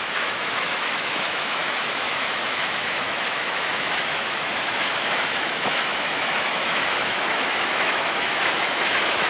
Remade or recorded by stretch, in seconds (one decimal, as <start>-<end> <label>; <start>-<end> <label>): 0.0-9.3 remade